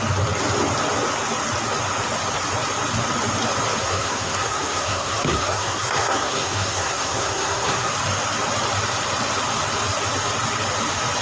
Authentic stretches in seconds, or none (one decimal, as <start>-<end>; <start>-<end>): 0.0-3.8; 7.9-11.2